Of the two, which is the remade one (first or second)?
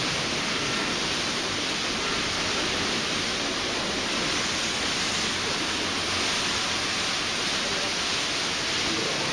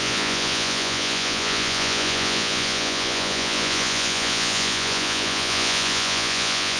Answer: second